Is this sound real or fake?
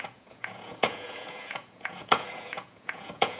fake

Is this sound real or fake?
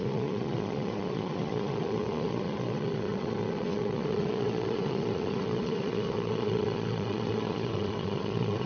fake